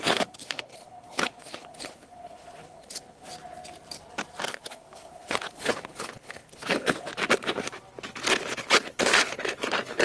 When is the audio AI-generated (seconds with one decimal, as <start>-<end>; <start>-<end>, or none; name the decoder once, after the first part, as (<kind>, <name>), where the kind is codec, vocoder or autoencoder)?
0.0-3.3 (codec, HILCodec); 4.5-7.1; 8.3-10.0